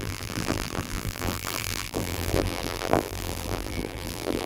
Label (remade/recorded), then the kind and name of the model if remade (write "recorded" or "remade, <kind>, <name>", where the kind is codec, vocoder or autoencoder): remade, vocoder, BigVGAN v2